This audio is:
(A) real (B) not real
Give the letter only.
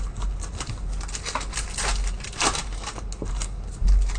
A